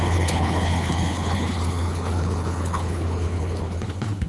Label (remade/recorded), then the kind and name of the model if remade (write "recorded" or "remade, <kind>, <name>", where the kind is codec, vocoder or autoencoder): remade, codec, HILCodec